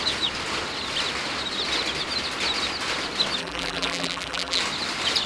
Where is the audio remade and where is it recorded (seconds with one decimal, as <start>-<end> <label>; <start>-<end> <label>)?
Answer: 0.0-3.4 recorded; 3.4-4.6 remade; 4.6-5.3 recorded